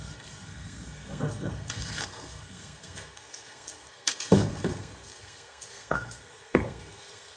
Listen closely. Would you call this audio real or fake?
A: fake